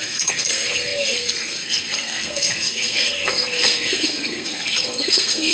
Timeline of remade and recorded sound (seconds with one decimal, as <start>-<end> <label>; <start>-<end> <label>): 0.0-5.5 remade